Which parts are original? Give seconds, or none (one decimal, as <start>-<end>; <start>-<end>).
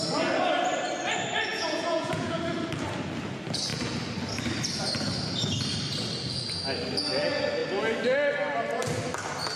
0.0-1.5; 2.4-9.6